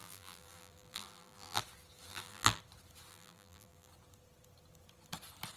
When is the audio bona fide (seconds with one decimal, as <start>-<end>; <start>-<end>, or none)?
1.6-2.1; 2.6-3.1; 3.9-5.6